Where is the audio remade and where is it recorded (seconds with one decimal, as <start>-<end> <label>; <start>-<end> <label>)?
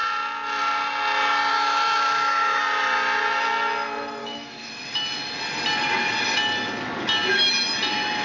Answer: 0.0-1.5 recorded; 1.5-2.6 remade; 2.6-4.2 recorded; 4.2-4.7 remade; 4.7-8.2 recorded